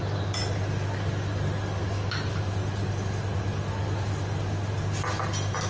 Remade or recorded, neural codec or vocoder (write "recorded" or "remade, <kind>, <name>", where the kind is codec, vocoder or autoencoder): recorded